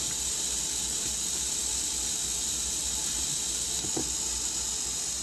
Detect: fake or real real